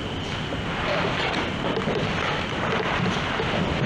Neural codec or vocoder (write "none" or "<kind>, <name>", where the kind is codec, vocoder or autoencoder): none